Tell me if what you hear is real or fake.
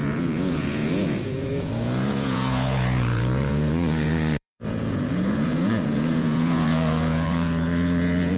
fake